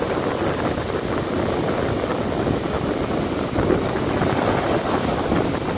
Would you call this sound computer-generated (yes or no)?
no